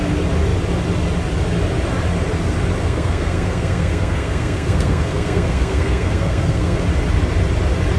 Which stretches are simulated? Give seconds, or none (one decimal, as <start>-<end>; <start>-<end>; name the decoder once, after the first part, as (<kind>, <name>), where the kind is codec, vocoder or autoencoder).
2.8-6.8 (codec, SNAC)